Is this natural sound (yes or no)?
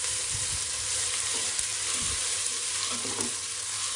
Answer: no